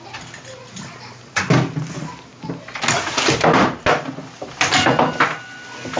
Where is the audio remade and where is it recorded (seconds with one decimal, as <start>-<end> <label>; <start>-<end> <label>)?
0.0-6.0 recorded